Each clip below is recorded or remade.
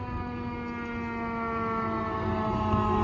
recorded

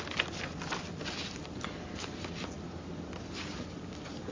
recorded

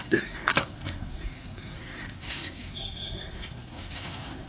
remade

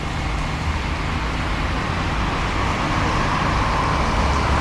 recorded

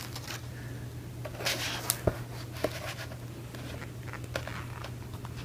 recorded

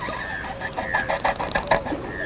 recorded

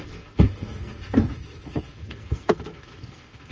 remade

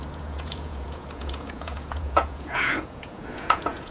remade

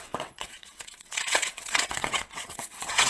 remade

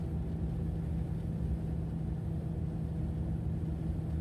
recorded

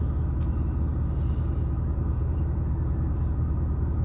recorded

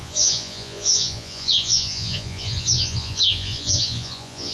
remade